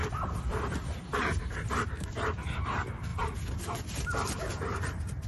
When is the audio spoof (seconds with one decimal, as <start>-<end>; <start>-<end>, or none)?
3.1-5.3